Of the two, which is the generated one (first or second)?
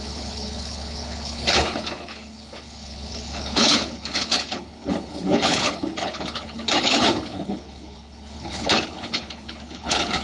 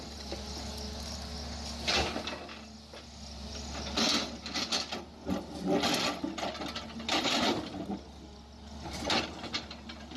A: first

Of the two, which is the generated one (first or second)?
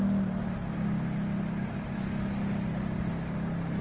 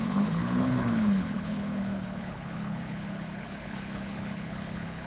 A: second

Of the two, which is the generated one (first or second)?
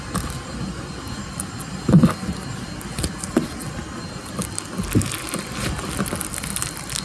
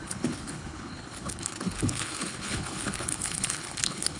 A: second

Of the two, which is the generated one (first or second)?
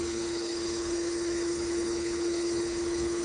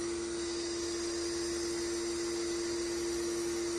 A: first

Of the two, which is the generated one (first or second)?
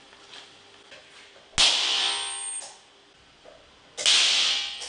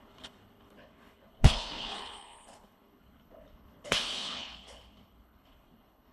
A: second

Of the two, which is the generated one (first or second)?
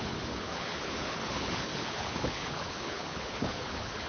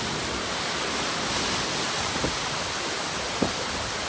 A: first